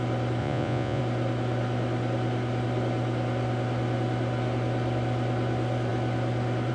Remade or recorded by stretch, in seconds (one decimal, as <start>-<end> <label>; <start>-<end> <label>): 0.0-0.4 recorded; 0.4-1.0 remade; 1.0-6.7 recorded